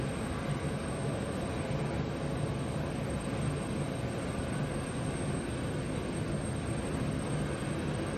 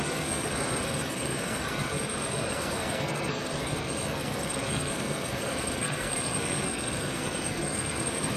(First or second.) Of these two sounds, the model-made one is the second